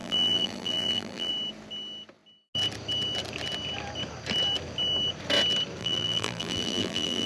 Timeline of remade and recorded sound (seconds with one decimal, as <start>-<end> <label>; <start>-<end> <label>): 0.0-1.3 remade; 1.3-5.8 recorded; 5.8-7.3 remade